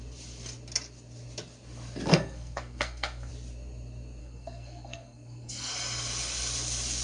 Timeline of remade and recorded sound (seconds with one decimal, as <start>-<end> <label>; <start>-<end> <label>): 0.0-2.1 recorded; 2.1-3.3 remade; 3.3-4.2 recorded; 4.2-5.7 remade; 5.7-7.0 recorded